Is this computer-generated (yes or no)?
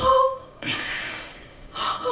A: yes